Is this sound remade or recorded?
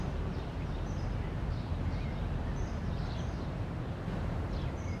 remade